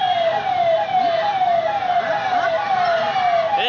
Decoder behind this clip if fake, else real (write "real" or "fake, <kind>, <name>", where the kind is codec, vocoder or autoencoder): real